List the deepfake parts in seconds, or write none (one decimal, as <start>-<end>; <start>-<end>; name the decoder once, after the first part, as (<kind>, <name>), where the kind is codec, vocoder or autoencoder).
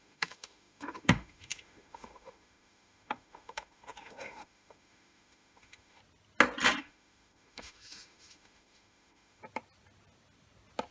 0.0-6.0 (autoencoder, DAC-VAE); 6.8-9.4